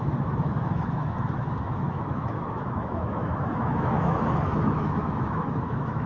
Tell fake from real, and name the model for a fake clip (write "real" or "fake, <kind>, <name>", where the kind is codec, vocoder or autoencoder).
fake, autoencoder, DAC-VAE